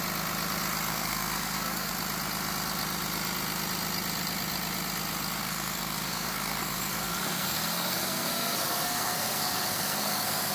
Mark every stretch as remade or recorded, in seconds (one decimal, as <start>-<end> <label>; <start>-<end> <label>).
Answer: 0.0-0.9 recorded; 0.9-1.9 remade; 1.9-5.4 recorded; 5.4-10.5 remade